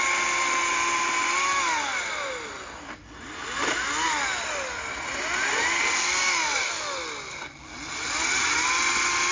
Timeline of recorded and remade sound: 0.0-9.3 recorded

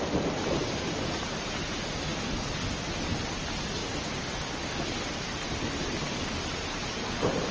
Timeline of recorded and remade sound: 0.0-7.5 recorded

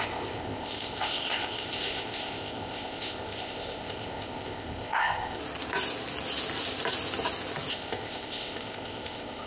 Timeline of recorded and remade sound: 0.0-5.4 remade; 5.4-7.7 recorded; 7.7-9.5 remade

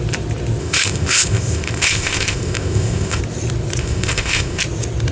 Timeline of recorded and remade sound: 0.0-0.6 recorded; 0.6-3.2 remade; 3.2-3.8 recorded; 3.8-4.6 remade; 4.6-5.1 recorded

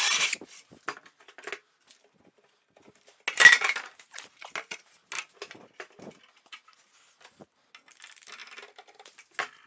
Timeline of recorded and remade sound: 0.0-9.7 recorded